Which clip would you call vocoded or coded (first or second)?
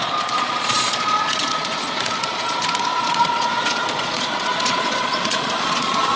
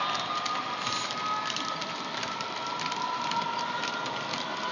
first